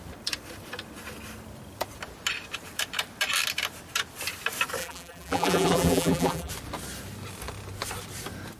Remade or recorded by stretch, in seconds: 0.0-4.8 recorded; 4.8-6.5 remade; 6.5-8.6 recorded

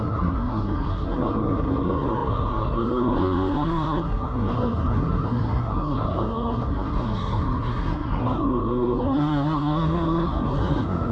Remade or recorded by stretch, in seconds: 0.0-11.1 remade

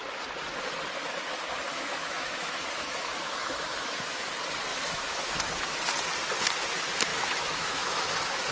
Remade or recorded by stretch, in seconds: 0.0-1.7 recorded; 1.7-4.3 remade; 4.3-4.7 recorded; 4.7-5.4 remade; 5.4-7.1 recorded; 7.1-8.1 remade; 8.1-8.5 recorded

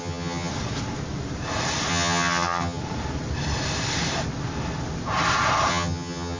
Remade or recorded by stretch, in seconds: 0.0-0.5 remade; 0.5-1.9 recorded; 1.9-2.8 remade; 2.8-5.7 recorded; 5.7-6.4 remade

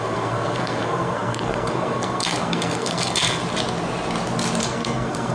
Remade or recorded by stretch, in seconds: 0.0-3.4 remade; 3.4-4.6 recorded; 4.6-5.3 remade

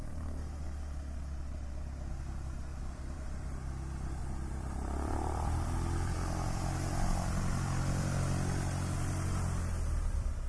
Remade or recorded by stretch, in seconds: 0.0-2.7 recorded; 2.7-3.6 remade; 3.6-4.2 recorded; 4.2-8.2 remade; 8.2-10.5 recorded

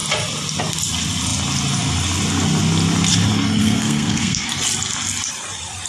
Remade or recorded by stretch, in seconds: 0.0-3.6 recorded; 3.6-4.6 remade; 4.6-5.9 recorded